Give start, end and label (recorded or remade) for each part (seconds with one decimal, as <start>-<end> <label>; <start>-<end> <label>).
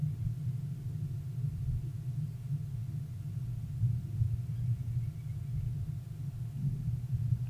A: 0.0-7.5 recorded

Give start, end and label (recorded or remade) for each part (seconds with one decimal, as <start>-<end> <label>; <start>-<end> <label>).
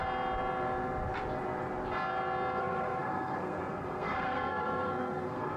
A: 0.0-2.6 recorded; 2.6-5.6 remade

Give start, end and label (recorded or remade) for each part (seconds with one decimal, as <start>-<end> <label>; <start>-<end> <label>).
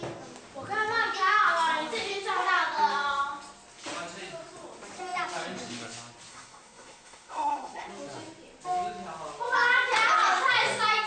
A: 0.0-6.3 recorded; 6.3-7.9 remade; 7.9-11.1 recorded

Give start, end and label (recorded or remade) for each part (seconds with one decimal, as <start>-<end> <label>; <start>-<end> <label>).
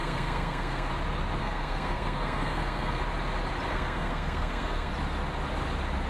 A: 0.0-0.9 remade; 0.9-1.4 recorded; 1.4-3.0 remade; 3.0-3.7 recorded; 3.7-4.9 remade; 4.9-6.1 recorded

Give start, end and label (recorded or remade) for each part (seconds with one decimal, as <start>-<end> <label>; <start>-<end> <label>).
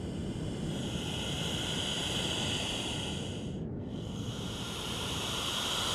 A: 0.0-3.7 recorded; 3.7-4.3 remade; 4.3-5.9 recorded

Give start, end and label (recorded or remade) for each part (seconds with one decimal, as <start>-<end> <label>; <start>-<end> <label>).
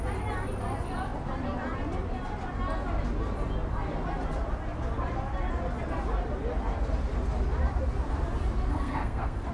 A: 0.0-8.7 recorded; 8.7-9.5 remade